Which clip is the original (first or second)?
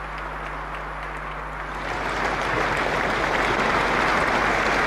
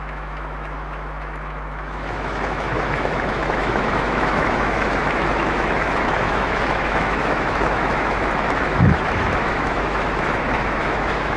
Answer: first